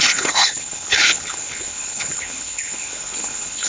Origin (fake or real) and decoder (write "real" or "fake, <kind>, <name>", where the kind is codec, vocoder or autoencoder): fake, codec, HILCodec